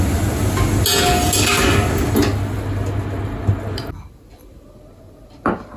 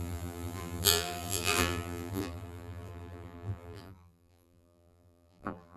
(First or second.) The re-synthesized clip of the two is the second